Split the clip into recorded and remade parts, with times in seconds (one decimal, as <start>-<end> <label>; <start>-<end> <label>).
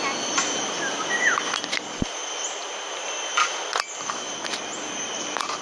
0.0-5.6 recorded